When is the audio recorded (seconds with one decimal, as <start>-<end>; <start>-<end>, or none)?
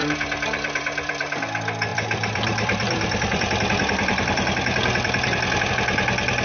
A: 1.4-1.9; 5.7-6.4